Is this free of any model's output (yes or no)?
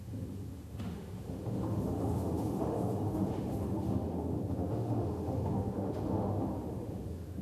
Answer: no